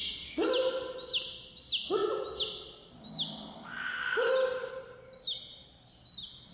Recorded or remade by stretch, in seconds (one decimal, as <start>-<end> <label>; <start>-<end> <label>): 0.0-0.5 remade; 0.5-6.5 recorded